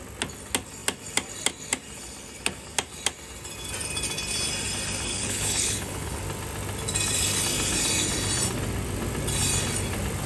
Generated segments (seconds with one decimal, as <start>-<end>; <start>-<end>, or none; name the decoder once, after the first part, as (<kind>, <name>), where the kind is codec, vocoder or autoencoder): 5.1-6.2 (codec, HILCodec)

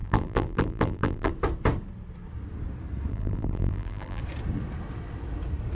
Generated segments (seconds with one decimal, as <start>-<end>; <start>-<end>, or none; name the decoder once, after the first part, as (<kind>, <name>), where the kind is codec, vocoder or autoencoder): 0.0-1.3 (vocoder, BigVGAN v2); 3.1-4.2

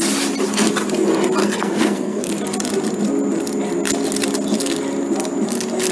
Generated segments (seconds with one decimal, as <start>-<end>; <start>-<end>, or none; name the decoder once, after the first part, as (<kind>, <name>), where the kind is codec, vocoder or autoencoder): 1.4-2.3 (codec, SNAC)

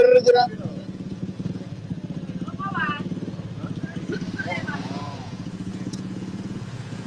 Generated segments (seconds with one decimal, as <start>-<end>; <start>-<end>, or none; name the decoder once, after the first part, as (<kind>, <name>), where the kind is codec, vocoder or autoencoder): 0.0-1.9 (vocoder, Vocos); 4.8-7.1

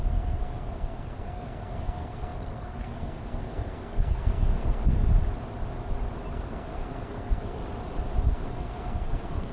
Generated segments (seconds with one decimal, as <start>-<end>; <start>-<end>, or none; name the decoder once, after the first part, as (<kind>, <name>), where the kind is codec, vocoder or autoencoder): 0.0-5.0 (codec, SNAC); 6.3-7.6; 8.3-9.5

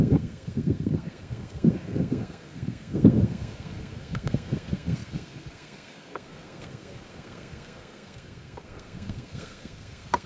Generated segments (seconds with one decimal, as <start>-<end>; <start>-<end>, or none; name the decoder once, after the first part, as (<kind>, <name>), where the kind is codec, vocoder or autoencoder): 0.0-10.3 (codec, SNAC)

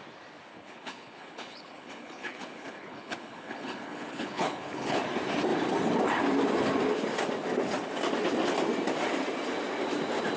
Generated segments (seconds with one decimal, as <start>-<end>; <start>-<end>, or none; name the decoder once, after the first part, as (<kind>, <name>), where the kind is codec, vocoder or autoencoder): 0.5-5.0 (codec, HILCodec)

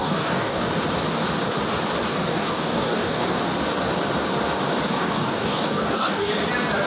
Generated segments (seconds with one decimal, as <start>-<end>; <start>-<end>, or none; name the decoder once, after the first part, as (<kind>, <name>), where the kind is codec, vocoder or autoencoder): 0.0-0.6 (codec, DAC); 2.1-3.4; 4.9-6.3